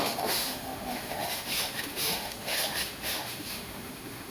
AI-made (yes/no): yes